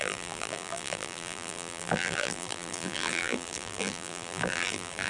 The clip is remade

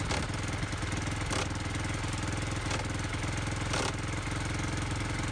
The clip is recorded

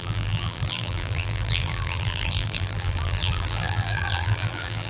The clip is remade